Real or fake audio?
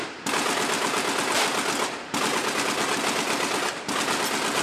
real